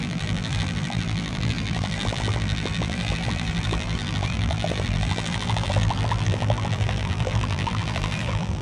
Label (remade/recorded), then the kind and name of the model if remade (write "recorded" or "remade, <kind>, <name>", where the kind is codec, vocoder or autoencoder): remade, vocoder, BigVGAN v2